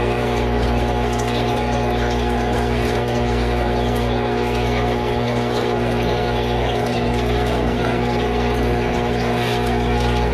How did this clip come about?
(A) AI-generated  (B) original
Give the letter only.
A